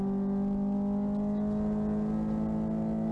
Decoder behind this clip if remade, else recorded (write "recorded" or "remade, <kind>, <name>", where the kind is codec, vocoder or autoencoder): recorded